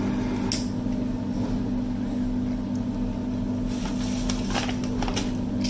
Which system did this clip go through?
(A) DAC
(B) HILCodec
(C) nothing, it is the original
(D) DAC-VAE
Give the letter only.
C